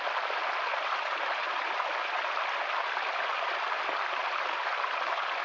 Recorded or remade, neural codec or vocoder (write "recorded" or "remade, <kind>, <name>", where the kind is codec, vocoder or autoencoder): recorded